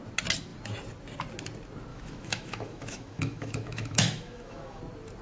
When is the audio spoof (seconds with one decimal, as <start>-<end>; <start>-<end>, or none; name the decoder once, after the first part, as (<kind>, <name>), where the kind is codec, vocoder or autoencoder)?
1.9-4.8 (autoencoder, DAC-VAE)